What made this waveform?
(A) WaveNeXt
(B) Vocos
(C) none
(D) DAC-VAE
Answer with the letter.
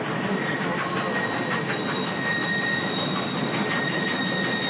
C